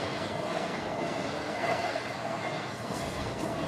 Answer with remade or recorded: remade